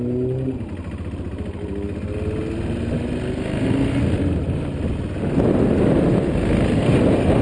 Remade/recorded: recorded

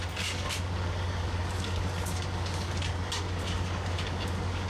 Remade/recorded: remade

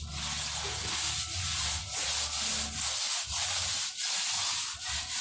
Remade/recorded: recorded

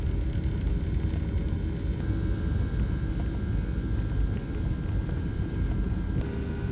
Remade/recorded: recorded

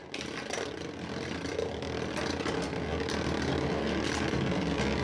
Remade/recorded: recorded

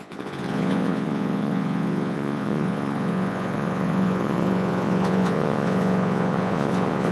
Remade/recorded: remade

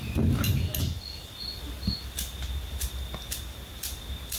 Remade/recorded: recorded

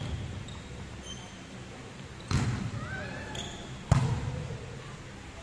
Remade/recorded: recorded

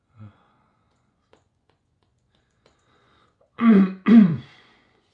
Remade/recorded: remade